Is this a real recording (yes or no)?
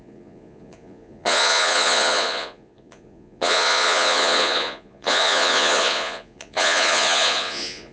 no